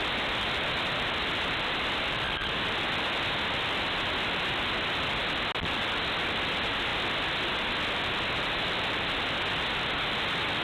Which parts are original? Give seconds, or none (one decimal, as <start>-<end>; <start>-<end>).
0.0-10.6